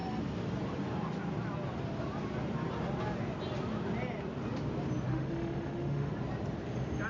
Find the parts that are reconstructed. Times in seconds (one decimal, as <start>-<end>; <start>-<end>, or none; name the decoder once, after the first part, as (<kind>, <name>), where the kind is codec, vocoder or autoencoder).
5.1-6.1 (autoencoder, DAC-VAE)